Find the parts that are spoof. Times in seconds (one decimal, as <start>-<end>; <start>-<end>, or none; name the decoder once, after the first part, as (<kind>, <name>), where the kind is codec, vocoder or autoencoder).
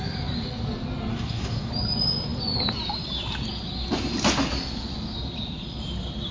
1.1-1.7 (codec, DAC)